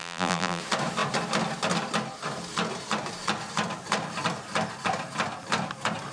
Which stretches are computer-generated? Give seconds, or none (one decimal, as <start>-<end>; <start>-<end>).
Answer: 0.0-0.6